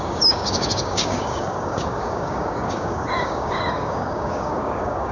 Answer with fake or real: fake